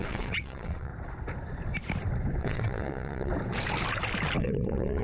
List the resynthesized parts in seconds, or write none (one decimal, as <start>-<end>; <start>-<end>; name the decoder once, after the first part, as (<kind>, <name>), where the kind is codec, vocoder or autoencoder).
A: 0.0-0.9 (vocoder, WaveNeXt); 2.4-3.3; 4.4-5.0